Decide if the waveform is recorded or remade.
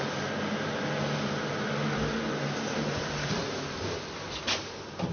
recorded